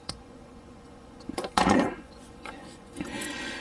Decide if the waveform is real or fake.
fake